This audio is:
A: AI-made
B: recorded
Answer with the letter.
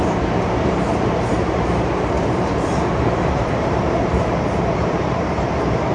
A